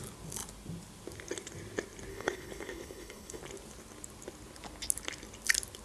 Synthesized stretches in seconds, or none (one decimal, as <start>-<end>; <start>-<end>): 2.1-3.4